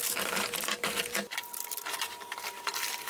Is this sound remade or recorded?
remade